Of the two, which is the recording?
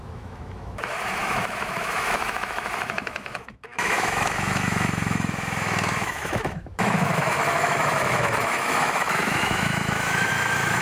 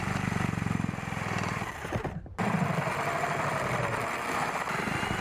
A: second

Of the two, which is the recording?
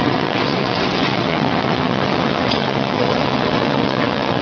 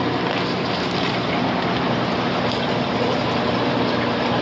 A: second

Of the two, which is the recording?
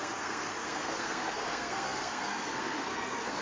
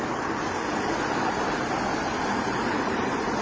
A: second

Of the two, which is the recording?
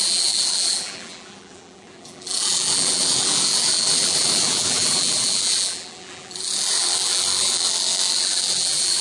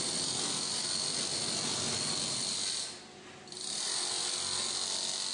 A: second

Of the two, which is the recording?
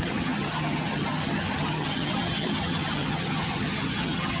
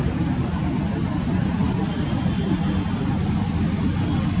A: second